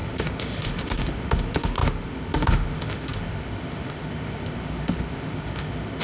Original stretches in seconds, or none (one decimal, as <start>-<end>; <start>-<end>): none